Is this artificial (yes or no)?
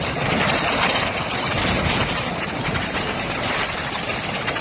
yes